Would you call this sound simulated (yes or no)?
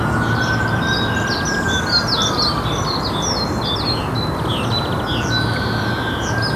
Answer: no